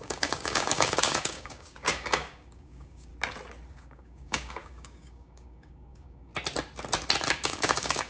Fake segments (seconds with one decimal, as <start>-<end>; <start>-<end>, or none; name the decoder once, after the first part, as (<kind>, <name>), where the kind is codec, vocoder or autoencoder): 0.0-3.1 (codec, DAC); 3.7-6.3; 7.3-8.1